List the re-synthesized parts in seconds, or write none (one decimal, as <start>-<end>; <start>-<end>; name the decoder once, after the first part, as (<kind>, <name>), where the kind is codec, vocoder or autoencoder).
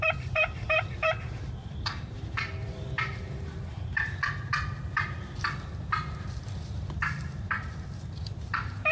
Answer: 0.0-4.5 (vocoder, BigVGAN v2); 7.0-8.9